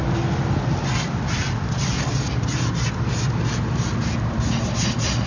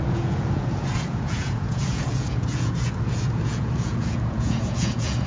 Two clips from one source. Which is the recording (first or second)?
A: first